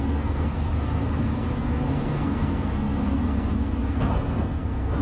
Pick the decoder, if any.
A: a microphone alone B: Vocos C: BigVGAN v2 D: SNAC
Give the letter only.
D